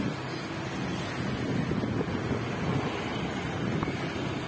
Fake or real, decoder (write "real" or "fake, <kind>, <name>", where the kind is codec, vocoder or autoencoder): real